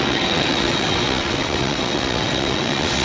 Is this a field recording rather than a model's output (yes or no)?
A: no